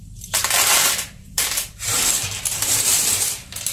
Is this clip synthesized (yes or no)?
yes